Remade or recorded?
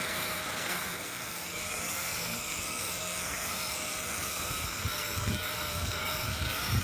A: remade